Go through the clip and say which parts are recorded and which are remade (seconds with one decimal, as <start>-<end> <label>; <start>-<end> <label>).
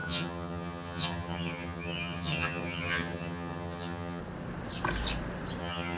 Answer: 0.0-4.2 remade; 4.2-5.6 recorded; 5.6-6.0 remade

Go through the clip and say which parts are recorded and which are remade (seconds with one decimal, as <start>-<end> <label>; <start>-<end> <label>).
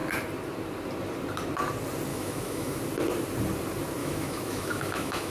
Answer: 0.0-2.1 recorded; 2.1-2.8 remade; 2.8-4.0 recorded; 4.0-5.3 remade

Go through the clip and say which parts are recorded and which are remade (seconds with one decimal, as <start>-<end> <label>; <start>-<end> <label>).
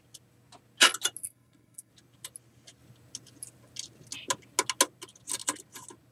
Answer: 0.0-1.2 recorded; 1.2-1.9 remade; 1.9-6.1 recorded